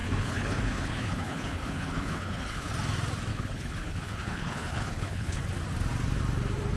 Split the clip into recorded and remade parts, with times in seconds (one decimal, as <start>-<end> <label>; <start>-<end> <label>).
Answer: 0.0-2.7 remade; 2.7-3.3 recorded; 3.3-5.4 remade; 5.4-6.8 recorded